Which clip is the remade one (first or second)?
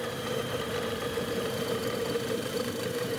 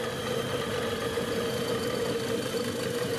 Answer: first